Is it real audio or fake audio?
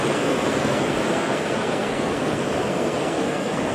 fake